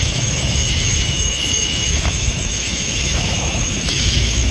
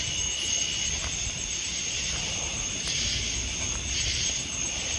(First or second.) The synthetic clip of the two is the first